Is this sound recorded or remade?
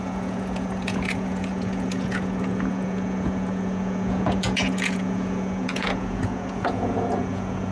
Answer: remade